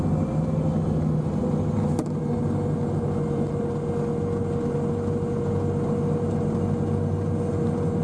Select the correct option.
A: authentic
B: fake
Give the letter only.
A